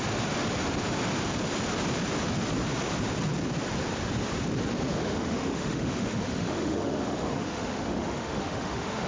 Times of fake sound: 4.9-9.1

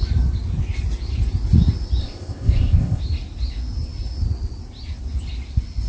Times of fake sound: 2.0-3.0

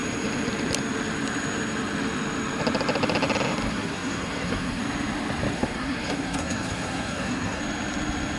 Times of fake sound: 3.7-4.8; 5.5-7.6

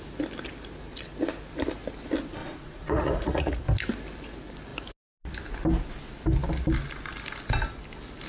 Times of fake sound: 2.4-3.6

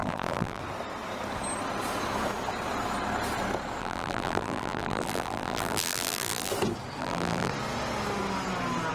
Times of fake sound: 0.0-0.6; 3.8-6.5; 7.0-7.5